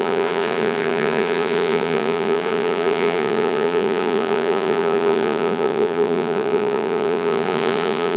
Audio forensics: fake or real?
fake